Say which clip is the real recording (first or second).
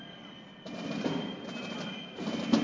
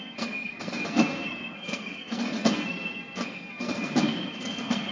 first